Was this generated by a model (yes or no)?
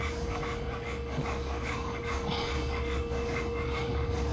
yes